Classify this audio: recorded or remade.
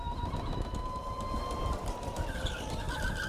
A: recorded